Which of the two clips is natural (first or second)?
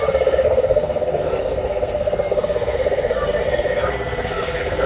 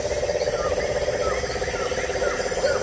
second